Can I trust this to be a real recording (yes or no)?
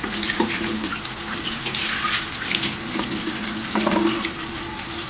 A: yes